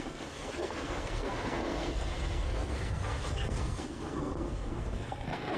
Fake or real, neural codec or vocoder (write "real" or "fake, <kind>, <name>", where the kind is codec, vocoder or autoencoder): fake, codec, SNAC